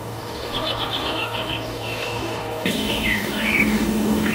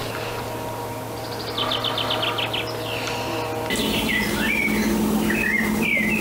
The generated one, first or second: first